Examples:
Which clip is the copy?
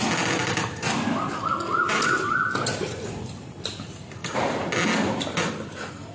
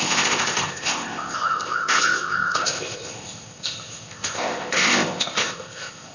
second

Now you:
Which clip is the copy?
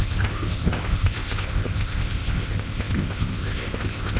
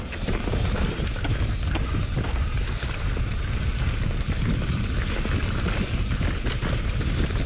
first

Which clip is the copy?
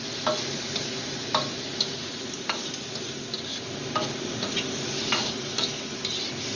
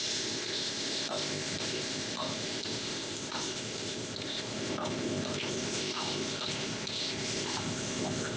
second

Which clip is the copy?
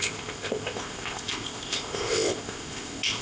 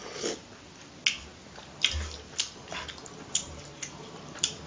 first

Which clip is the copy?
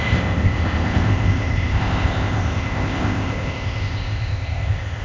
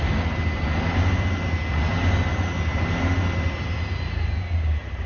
first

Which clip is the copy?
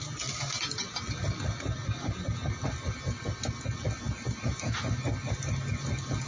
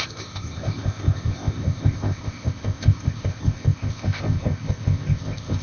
second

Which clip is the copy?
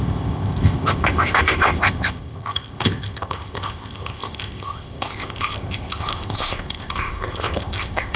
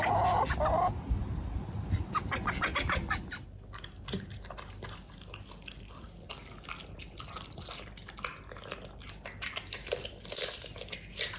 first